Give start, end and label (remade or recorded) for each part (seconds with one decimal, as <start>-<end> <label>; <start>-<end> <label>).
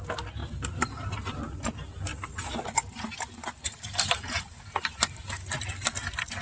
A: 0.0-0.4 recorded; 0.4-1.1 remade; 1.1-2.1 recorded; 2.1-5.5 remade; 5.5-6.4 recorded